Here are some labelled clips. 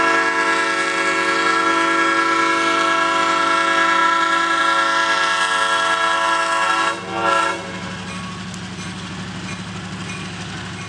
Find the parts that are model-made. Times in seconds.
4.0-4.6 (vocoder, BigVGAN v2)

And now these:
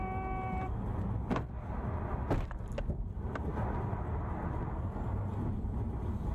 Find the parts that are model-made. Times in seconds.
3.8-6.3 (vocoder, BigVGAN v2)